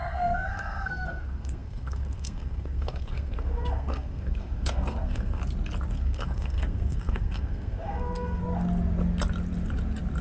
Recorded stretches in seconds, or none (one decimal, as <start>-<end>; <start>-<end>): 5.4-5.9; 8.4-10.2